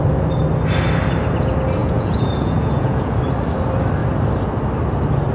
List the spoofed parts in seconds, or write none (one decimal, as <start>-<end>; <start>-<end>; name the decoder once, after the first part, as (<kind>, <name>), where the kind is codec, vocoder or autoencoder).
1.8-3.2 (vocoder, Vocos)